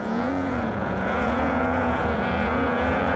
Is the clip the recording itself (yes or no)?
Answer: no